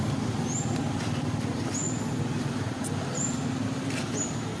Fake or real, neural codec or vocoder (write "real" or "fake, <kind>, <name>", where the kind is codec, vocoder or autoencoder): real